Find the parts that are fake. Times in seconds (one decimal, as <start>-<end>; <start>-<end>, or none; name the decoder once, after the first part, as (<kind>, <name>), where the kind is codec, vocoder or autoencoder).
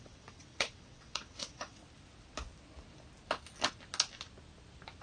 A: 0.0-1.8 (vocoder, WaveNeXt)